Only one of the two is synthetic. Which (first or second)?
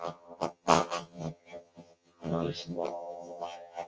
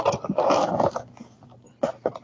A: first